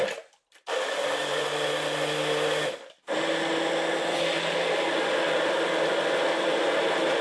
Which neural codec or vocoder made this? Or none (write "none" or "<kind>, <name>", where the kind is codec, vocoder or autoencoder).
none